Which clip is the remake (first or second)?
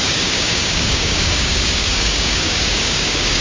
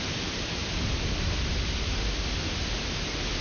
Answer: first